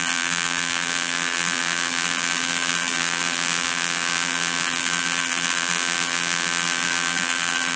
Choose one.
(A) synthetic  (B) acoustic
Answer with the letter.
A